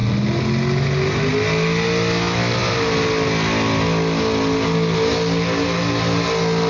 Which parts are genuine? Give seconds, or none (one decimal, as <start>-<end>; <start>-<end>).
0.0-6.7